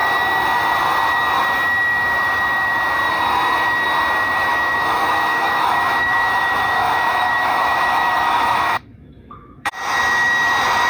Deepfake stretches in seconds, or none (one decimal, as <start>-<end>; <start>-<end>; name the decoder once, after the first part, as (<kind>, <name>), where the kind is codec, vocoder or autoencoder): 4.5-9.7 (autoencoder, DAC-VAE)